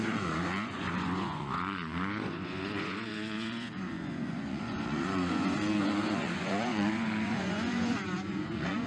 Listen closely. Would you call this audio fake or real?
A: fake